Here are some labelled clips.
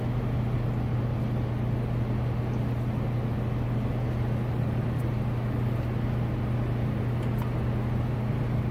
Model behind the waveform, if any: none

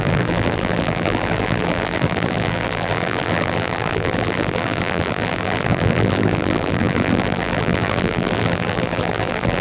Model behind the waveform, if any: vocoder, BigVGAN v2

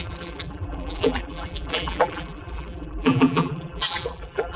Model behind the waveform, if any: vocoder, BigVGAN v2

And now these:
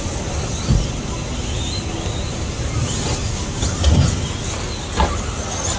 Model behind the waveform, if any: none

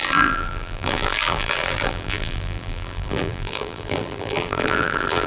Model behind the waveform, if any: vocoder, BigVGAN v2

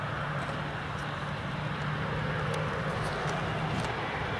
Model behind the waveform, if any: none